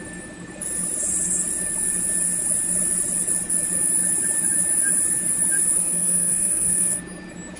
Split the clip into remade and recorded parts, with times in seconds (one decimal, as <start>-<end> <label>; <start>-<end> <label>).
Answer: 0.0-5.8 recorded; 5.8-7.0 remade; 7.0-7.6 recorded